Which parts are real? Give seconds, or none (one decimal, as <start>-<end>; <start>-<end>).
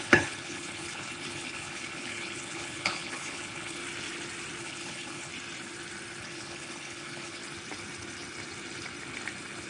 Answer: 3.8-4.6; 5.3-6.2; 7.4-9.7